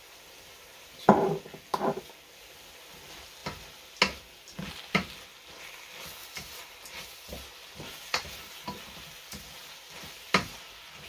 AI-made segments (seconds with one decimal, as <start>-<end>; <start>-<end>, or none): 6.2-7.4